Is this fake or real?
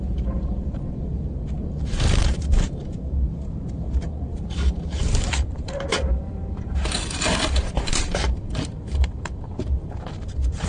fake